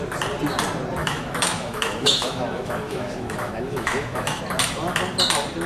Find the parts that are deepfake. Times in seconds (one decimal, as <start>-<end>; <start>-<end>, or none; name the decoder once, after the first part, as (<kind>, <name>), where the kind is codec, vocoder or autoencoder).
1.0-4.4 (autoencoder, DAC-VAE)